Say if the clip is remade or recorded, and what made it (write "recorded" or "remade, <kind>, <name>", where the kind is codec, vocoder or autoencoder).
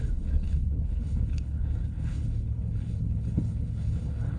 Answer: remade, codec, HILCodec